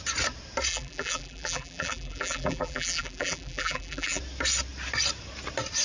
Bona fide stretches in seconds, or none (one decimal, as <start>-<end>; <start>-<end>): 0.0-0.7; 4.2-5.8